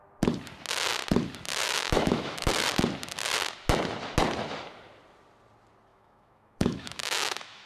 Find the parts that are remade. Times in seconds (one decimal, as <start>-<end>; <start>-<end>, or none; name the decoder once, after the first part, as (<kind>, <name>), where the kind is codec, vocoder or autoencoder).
1.6-2.5 (autoencoder, DAC-VAE); 5.9-7.7